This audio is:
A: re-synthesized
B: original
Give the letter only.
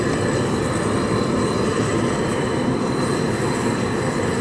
B